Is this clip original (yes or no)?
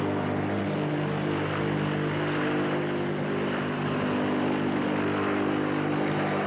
yes